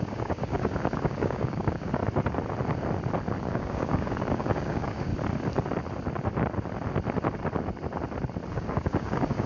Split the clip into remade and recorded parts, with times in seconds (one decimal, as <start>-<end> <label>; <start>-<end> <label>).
0.0-2.0 remade; 2.0-3.4 recorded; 3.4-5.1 remade; 5.1-8.5 recorded; 8.5-9.5 remade

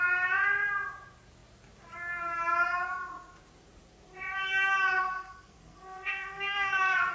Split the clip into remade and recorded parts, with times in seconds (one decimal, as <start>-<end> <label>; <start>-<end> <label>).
0.0-5.0 recorded; 5.0-7.1 remade

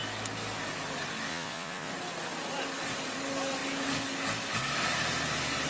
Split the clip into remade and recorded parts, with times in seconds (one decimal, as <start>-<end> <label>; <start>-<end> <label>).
0.0-1.3 recorded; 1.3-1.9 remade; 1.9-5.7 recorded

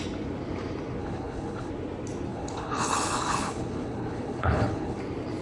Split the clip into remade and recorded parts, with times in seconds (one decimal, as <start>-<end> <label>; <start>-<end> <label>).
0.0-1.0 recorded; 1.0-1.7 remade; 1.7-2.3 recorded; 2.3-5.0 remade; 5.0-5.4 recorded

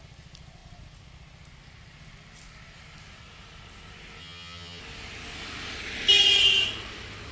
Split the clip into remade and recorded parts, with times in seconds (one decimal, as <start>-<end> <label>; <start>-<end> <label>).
0.0-4.2 recorded; 4.2-4.8 remade; 4.8-7.3 recorded